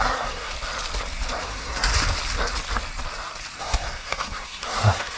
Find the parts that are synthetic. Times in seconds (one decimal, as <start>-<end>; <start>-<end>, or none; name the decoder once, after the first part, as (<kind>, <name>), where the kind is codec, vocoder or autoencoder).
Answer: 0.0-0.5 (codec, SNAC); 1.4-1.9; 3.6-5.2